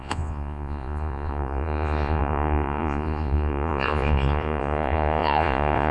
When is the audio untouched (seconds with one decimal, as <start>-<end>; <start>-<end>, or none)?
none